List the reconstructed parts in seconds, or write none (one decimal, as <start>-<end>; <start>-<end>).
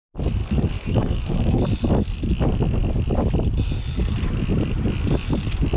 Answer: 0.4-1.6